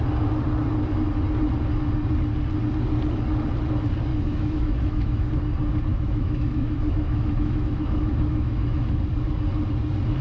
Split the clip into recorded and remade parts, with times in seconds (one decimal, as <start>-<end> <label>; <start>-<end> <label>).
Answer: 0.0-4.1 recorded; 4.1-5.3 remade; 5.3-5.9 recorded; 5.9-9.0 remade; 9.0-10.2 recorded